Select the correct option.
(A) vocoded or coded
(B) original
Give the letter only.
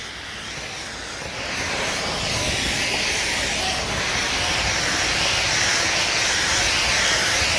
B